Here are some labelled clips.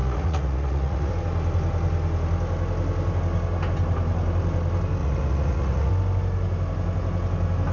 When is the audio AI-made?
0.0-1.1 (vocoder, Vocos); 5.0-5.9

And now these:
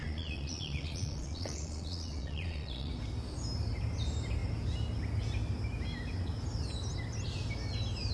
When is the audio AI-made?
0.0-2.9 (vocoder, Vocos)

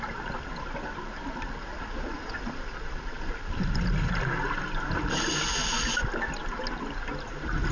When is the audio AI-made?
1.7-3.3 (vocoder, Vocos)

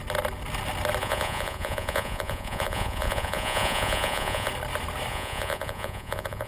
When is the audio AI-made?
1.0-4.5 (vocoder, Vocos); 5.1-6.5

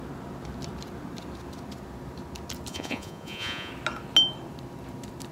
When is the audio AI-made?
2.7-3.7 (vocoder, Vocos)

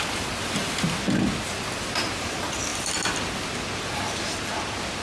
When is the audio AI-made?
none

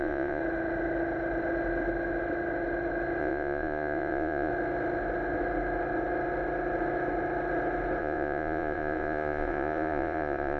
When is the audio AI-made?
0.0-0.4 (vocoder, Vocos); 3.2-4.5; 8.0-10.6